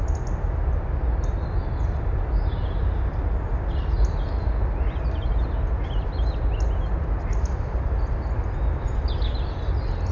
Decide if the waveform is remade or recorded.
recorded